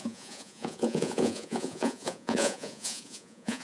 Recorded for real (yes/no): no